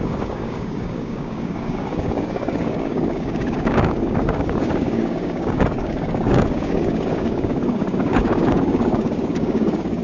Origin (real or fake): fake